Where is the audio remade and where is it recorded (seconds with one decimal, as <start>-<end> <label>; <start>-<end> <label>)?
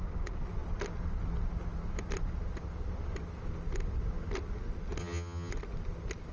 0.0-5.0 recorded; 5.0-5.5 remade; 5.5-6.3 recorded